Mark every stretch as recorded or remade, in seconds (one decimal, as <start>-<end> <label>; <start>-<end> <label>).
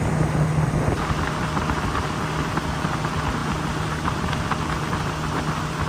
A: 0.0-5.9 recorded